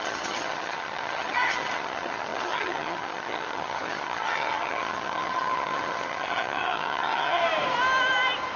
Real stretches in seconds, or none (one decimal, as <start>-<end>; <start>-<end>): 7.4-8.6